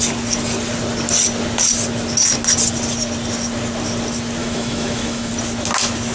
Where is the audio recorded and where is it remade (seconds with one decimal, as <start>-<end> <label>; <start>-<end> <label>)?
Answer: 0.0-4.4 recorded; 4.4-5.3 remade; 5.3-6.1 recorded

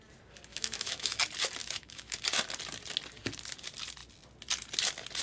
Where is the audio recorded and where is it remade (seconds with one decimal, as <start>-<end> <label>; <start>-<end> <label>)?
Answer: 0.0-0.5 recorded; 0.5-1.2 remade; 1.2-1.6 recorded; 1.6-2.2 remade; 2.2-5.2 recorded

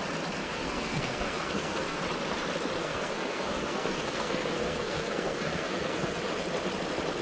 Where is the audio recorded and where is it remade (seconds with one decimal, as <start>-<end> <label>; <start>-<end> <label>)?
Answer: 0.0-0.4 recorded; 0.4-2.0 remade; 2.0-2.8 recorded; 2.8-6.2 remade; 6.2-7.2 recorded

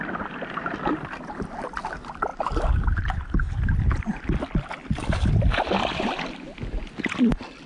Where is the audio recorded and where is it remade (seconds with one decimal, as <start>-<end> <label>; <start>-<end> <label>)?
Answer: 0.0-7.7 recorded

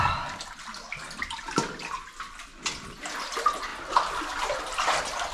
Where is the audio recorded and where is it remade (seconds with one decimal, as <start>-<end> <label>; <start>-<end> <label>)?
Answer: 0.0-5.3 recorded